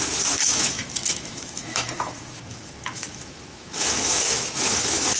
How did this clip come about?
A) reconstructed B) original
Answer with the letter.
A